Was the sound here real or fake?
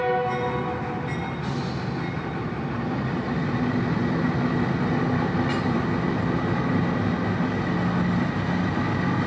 real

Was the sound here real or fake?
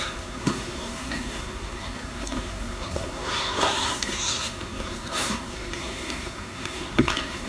fake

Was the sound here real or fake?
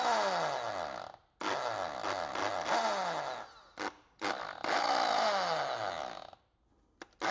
real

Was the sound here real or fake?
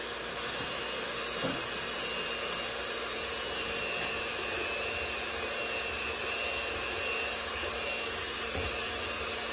real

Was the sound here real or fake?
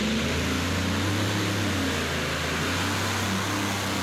real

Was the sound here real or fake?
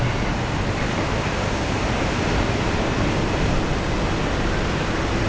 real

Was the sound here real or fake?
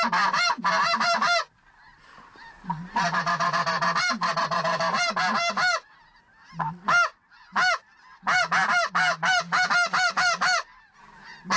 real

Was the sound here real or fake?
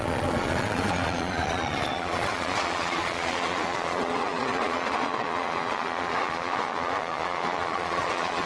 fake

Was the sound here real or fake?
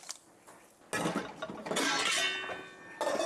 real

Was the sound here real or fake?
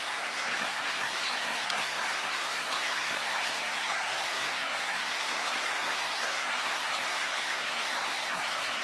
fake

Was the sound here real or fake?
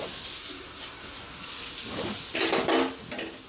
real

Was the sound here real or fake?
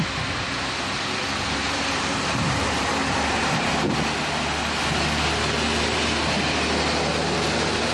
real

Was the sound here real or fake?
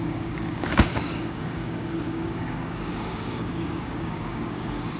fake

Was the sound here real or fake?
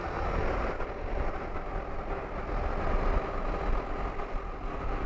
real